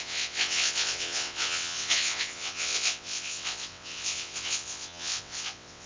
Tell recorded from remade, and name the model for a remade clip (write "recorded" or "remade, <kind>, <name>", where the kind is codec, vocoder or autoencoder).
remade, vocoder, WaveNeXt